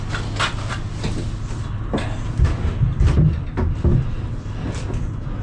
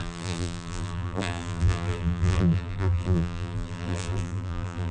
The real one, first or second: first